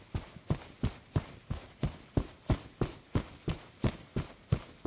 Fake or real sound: real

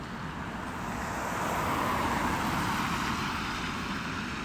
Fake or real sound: real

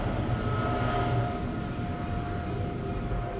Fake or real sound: real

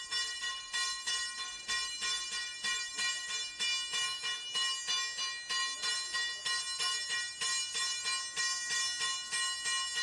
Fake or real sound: real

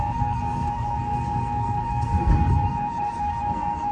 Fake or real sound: fake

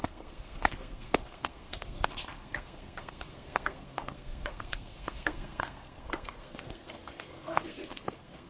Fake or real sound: fake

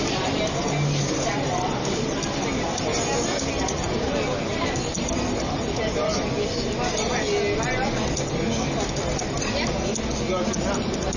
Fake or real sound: real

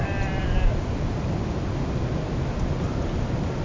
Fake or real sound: real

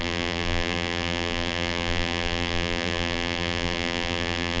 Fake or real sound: fake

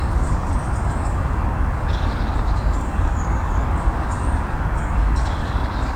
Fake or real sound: fake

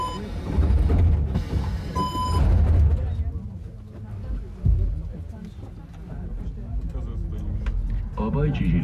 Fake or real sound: real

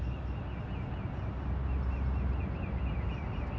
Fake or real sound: real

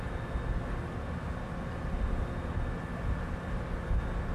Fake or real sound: real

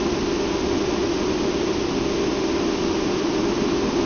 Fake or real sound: real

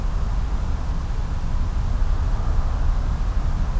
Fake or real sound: real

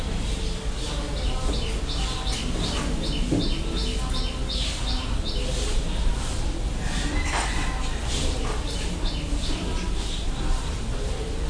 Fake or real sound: real